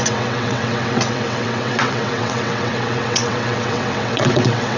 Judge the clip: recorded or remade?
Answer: remade